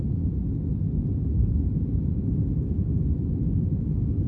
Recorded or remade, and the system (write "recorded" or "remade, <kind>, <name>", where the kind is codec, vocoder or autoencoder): recorded